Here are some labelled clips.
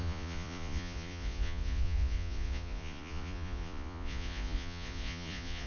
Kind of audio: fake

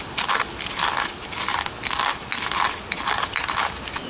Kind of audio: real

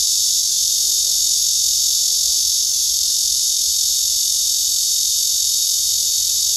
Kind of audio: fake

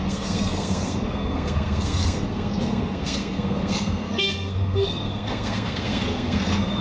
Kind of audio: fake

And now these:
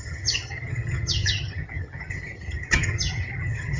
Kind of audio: fake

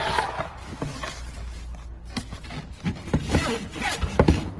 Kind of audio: real